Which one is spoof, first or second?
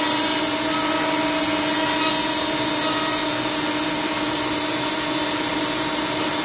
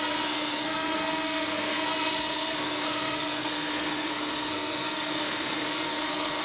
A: second